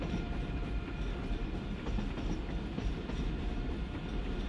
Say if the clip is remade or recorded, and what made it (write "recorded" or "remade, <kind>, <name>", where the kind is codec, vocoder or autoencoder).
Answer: recorded